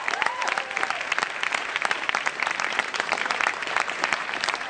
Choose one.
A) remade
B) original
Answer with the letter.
A